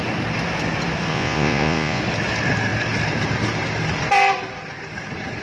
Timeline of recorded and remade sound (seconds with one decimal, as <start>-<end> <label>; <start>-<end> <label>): 0.0-1.1 recorded; 1.1-2.0 remade; 2.0-5.4 recorded